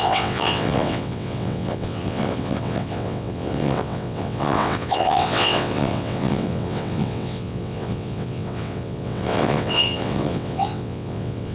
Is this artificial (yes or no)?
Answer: yes